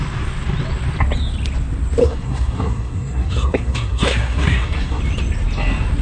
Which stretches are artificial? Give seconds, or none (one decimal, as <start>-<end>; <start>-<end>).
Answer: 2.0-5.0